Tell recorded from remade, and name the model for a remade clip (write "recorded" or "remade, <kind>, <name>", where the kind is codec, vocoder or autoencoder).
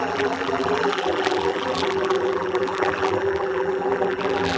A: remade, vocoder, BigVGAN v2